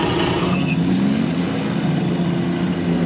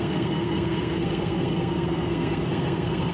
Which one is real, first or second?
first